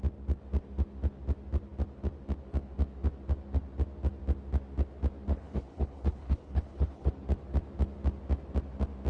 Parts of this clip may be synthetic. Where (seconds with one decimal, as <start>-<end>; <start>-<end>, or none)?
5.3-7.1